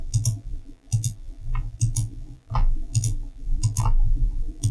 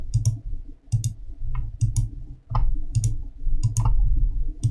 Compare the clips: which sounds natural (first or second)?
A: second